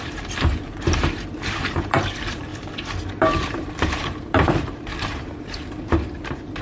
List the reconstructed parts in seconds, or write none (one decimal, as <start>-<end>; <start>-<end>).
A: 0.0-2.5; 3.2-6.6